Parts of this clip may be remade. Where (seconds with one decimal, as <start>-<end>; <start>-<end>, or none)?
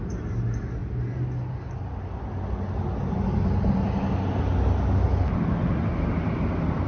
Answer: none